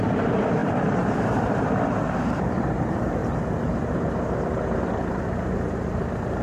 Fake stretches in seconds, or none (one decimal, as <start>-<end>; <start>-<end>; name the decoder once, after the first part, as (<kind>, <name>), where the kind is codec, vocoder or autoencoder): 0.0-6.4 (vocoder, BigVGAN v2)